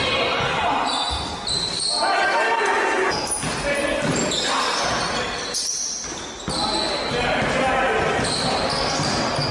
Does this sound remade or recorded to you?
recorded